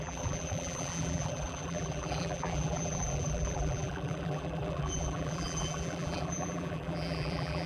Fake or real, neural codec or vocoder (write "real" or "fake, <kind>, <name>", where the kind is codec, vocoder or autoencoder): fake, vocoder, BigVGAN v2